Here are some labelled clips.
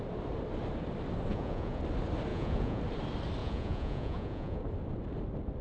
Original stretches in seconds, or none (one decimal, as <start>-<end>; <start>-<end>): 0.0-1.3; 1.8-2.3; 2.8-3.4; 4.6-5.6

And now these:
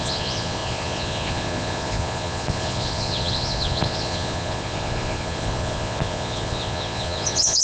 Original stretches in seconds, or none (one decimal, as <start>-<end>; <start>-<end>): none

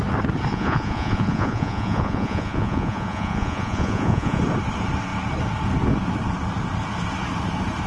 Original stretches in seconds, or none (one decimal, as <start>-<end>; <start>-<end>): 0.0-0.5; 4.4-7.9

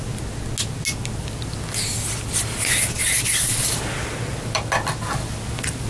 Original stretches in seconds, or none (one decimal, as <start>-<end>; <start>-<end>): 0.0-5.9